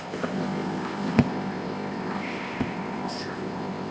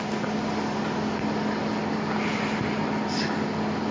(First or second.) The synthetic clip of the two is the first